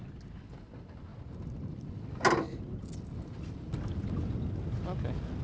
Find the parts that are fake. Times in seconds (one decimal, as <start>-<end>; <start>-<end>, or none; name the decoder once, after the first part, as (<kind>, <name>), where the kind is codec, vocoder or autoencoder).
none